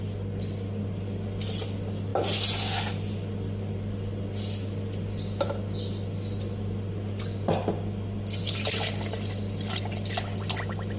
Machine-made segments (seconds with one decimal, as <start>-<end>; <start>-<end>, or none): none